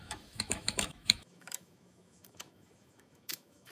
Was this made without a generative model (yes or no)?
no